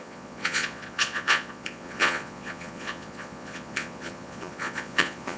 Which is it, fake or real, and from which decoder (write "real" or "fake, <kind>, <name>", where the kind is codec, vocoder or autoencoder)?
fake, vocoder, Vocos